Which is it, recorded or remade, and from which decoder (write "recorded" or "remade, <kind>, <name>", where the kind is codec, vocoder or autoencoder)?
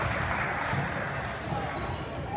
recorded